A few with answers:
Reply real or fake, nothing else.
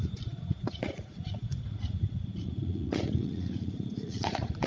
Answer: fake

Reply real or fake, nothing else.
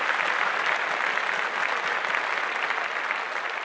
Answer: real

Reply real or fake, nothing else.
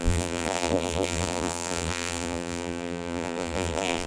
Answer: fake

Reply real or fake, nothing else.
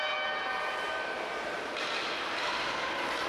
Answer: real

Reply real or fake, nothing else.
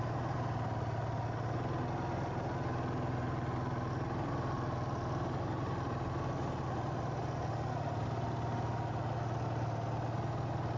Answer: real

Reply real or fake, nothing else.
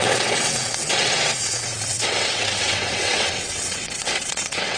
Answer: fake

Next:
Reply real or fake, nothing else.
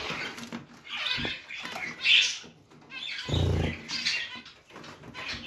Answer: real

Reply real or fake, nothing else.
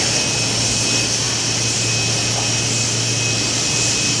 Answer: real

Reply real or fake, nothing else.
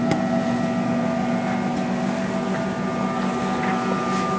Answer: real